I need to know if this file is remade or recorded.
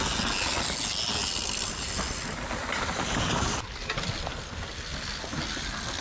recorded